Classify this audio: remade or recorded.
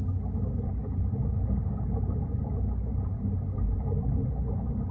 recorded